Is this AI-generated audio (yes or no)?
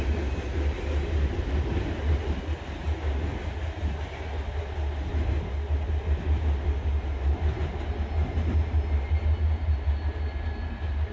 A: no